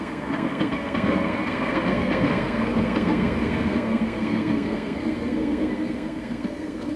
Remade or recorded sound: remade